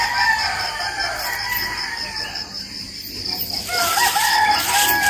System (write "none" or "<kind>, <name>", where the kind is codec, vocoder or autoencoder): none